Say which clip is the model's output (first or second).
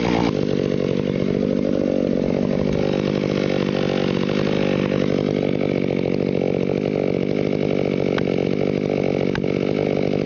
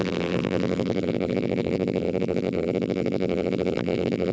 second